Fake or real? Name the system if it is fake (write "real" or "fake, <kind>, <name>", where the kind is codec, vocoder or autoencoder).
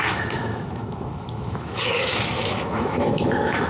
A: fake, autoencoder, DAC-VAE